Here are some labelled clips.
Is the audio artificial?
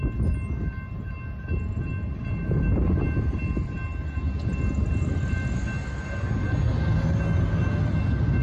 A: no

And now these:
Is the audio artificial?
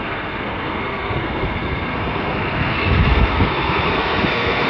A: yes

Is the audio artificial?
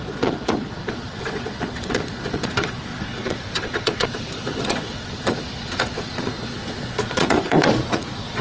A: yes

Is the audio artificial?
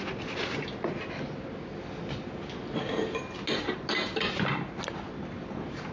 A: no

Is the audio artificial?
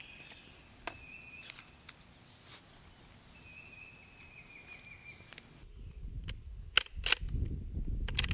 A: no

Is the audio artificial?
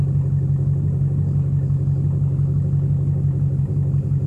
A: no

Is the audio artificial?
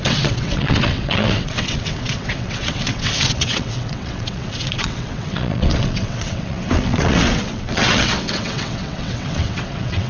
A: yes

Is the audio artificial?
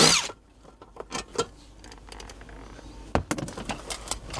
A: no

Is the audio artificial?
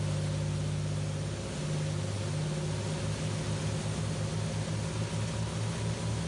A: no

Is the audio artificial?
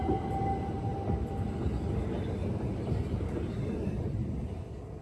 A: no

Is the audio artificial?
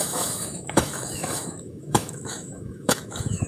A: yes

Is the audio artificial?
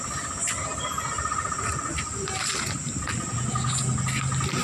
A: no